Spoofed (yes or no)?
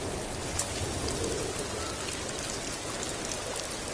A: no